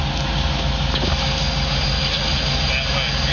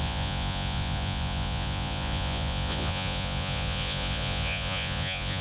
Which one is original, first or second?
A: first